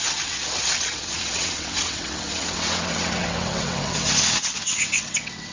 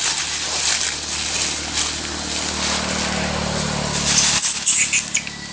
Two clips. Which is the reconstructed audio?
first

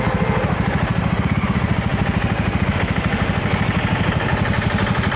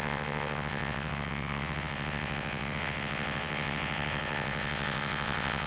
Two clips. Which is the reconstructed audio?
second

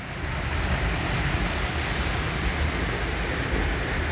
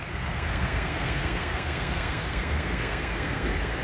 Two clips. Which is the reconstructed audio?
second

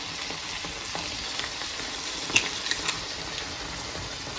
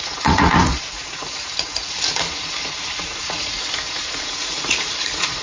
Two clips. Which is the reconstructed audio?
second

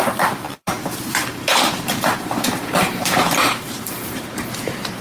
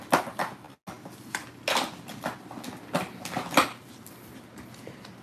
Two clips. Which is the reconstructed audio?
first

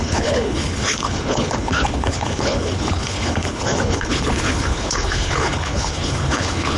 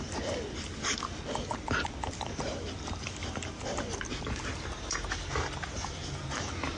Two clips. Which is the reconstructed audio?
first